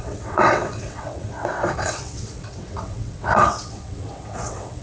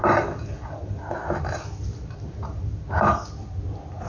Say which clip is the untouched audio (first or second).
second